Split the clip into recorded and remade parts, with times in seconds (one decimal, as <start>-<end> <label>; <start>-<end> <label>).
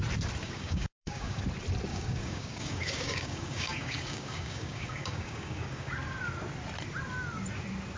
0.0-0.4 recorded; 0.4-1.4 remade; 1.4-1.9 recorded; 1.9-5.9 remade; 5.9-8.0 recorded